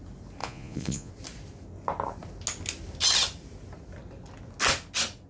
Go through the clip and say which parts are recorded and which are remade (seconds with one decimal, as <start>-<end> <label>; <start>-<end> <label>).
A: 0.0-0.4 recorded; 0.4-1.1 remade; 1.1-5.3 recorded